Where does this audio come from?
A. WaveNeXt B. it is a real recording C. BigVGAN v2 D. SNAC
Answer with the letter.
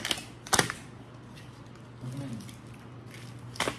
B